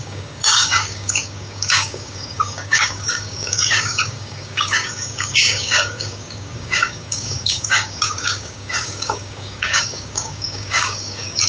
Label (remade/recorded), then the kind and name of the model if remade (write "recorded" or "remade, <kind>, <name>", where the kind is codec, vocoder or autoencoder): remade, codec, DAC